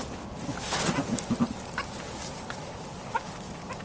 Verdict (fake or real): real